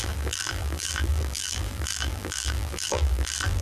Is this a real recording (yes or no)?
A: no